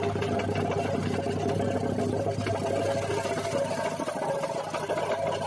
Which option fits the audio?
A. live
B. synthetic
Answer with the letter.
A